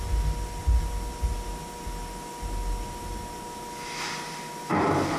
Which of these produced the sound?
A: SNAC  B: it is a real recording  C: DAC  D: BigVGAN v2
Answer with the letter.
B